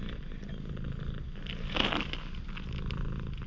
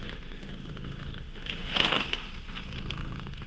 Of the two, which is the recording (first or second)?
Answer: first